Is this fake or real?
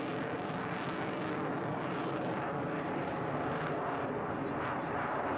fake